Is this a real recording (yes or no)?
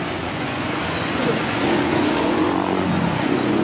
no